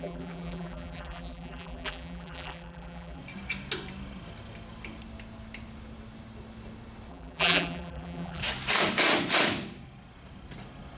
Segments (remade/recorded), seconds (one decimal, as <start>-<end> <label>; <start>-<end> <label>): 0.0-3.2 remade; 3.2-7.1 recorded; 7.1-8.4 remade; 8.4-11.0 recorded